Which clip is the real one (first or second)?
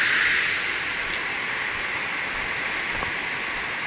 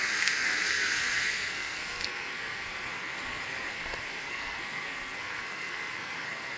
first